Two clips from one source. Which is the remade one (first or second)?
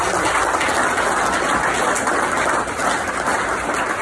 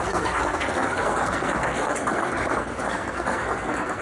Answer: second